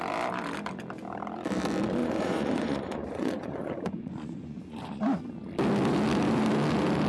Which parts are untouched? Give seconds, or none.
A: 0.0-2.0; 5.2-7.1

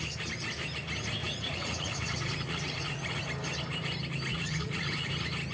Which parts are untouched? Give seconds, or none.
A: 0.0-1.2; 3.2-4.3; 5.1-5.5

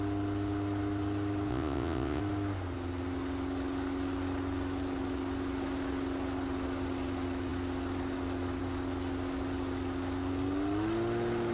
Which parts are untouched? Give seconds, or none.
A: 0.0-1.5; 2.2-11.5

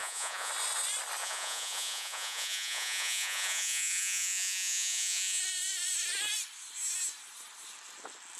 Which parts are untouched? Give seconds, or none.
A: 0.5-1.2; 5.4-8.4